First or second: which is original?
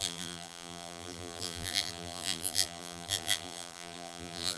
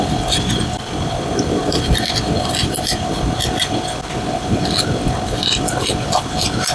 second